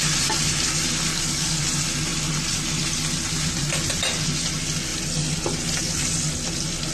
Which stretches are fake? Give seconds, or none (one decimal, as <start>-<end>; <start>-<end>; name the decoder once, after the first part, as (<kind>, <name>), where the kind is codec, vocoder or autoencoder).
1.1-1.6 (codec, DAC)